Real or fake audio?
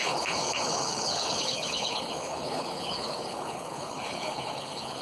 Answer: fake